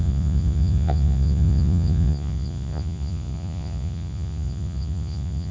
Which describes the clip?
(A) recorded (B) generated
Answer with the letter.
B